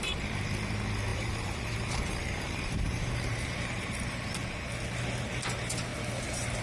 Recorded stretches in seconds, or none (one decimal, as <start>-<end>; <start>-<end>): 0.0-1.1; 4.7-6.6